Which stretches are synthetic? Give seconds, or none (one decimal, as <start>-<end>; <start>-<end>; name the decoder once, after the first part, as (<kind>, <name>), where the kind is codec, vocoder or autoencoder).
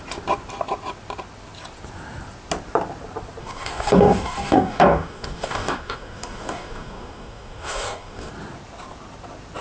3.4-8.3 (codec, DAC)